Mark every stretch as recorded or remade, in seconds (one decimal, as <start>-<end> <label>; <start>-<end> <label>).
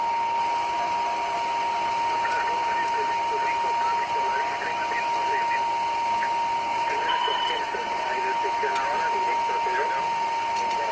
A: 0.0-6.7 recorded; 6.7-8.1 remade; 8.1-10.9 recorded